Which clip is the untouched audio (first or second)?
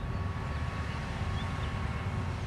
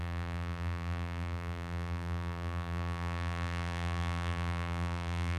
first